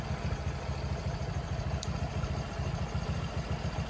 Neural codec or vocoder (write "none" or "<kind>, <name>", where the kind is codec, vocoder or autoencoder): none